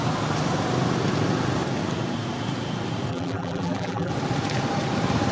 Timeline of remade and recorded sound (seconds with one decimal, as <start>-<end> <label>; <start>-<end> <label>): 0.0-3.1 recorded; 3.1-4.1 remade; 4.1-5.3 recorded